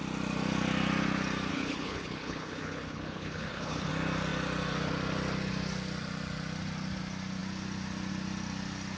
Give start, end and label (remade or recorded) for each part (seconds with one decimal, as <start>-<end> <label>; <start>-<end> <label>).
0.0-1.5 recorded; 1.5-3.9 remade; 3.9-9.0 recorded